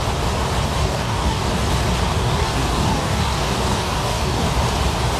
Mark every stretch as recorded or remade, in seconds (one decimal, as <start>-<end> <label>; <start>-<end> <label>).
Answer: 0.0-0.8 recorded; 0.8-1.5 remade; 1.5-2.1 recorded; 2.1-4.4 remade; 4.4-5.2 recorded

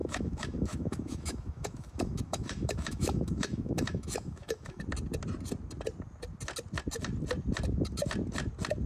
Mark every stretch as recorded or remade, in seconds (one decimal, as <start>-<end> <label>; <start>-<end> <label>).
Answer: 0.0-4.8 remade; 4.8-8.9 recorded

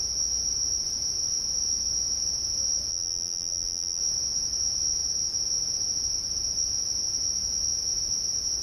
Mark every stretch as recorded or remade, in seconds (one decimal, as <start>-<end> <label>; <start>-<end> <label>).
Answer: 0.0-2.9 recorded; 2.9-4.0 remade; 4.0-8.6 recorded

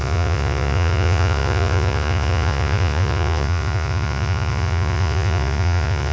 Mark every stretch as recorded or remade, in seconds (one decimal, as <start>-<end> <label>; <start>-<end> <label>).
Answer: 0.0-6.1 remade

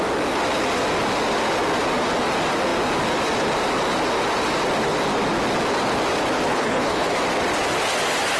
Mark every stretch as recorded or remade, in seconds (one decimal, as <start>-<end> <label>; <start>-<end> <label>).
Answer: 0.0-6.5 recorded; 6.5-7.1 remade; 7.1-8.4 recorded